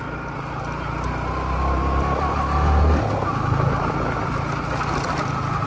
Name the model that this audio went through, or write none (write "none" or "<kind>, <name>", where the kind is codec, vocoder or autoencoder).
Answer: none